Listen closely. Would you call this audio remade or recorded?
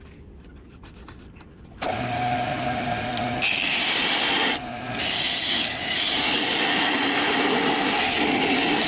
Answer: recorded